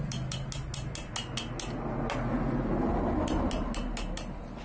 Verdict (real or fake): real